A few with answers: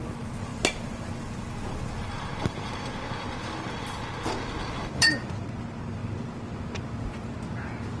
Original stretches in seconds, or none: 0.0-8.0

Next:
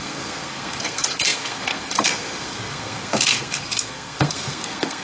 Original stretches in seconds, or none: none

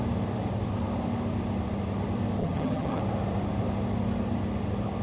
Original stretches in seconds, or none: 0.0-2.4; 3.0-5.0

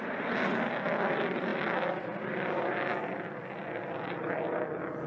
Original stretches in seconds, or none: 0.0-5.1